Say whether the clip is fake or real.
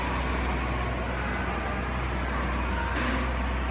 real